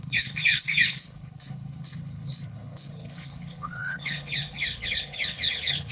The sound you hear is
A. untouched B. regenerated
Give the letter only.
B